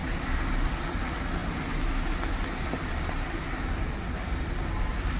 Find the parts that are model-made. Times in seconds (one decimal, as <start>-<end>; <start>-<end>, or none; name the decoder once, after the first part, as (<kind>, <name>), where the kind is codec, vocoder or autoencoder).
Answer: none